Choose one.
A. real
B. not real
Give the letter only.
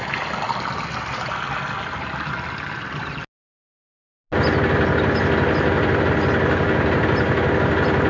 A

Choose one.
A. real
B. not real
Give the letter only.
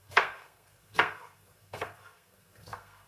B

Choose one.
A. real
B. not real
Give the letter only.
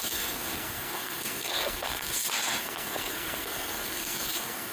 B